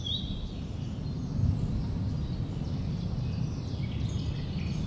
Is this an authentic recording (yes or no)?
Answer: yes